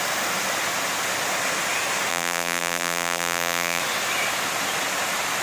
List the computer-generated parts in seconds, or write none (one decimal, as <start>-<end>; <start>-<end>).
2.1-3.8